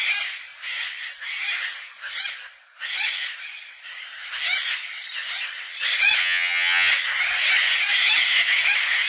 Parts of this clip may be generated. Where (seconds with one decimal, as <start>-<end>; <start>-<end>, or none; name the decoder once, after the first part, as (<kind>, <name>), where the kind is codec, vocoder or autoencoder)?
6.2-6.9 (vocoder, HiFi-GAN)